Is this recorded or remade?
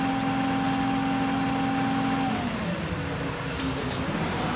recorded